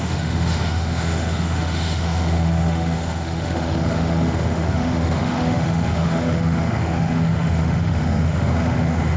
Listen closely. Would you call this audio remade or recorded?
remade